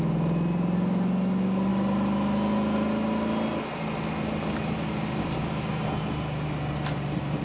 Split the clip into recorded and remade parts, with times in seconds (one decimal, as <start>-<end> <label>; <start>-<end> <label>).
0.0-7.4 recorded